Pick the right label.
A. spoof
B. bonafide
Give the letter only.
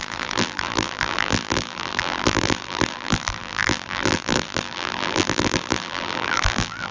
A